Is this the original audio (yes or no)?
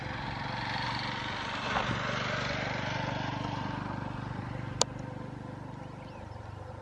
yes